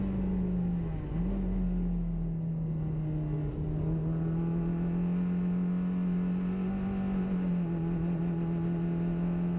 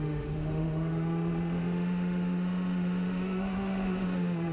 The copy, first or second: second